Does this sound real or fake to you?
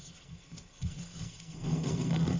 fake